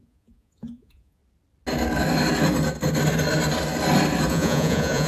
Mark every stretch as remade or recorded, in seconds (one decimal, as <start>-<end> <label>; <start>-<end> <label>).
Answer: 0.0-1.2 remade; 1.2-4.3 recorded; 4.3-5.1 remade